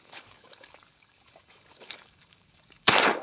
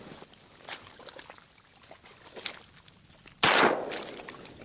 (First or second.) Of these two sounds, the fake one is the first